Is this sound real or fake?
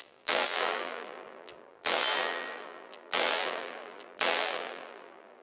fake